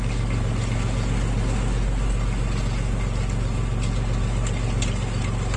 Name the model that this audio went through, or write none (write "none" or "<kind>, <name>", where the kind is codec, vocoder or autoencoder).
none